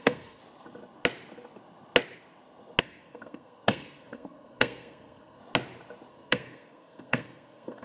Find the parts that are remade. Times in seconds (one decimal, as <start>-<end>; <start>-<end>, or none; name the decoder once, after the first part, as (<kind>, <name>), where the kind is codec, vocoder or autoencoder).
0.0-0.4 (codec, SNAC); 2.8-5.4; 6.1-7.8